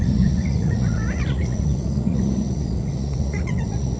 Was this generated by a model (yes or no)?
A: yes